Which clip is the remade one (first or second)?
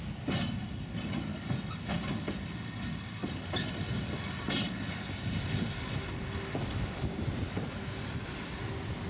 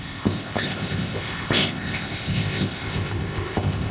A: second